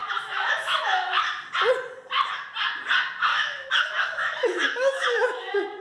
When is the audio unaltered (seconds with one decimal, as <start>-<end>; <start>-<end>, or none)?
1.2-3.3